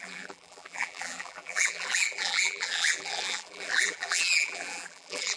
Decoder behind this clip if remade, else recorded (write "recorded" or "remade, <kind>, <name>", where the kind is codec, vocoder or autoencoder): remade, vocoder, BigVGAN v2